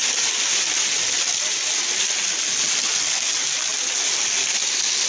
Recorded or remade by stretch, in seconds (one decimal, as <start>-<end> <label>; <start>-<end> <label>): 0.0-5.1 recorded